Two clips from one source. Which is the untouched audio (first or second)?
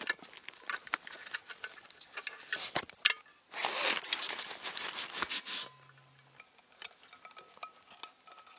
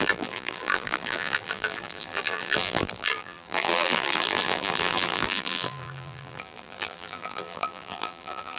first